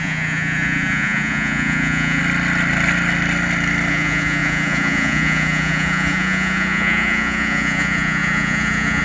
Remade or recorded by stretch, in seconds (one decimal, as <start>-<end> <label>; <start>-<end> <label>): 0.0-2.2 remade; 2.2-3.9 recorded; 3.9-9.0 remade